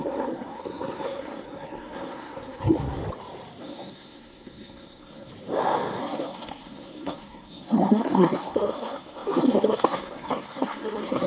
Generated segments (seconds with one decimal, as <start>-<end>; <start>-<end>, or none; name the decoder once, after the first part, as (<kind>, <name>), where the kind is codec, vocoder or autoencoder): 0.0-3.0 (codec, SNAC); 3.6-5.3; 6.0-11.3